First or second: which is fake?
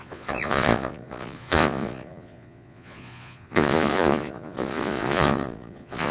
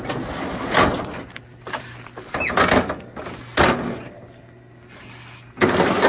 first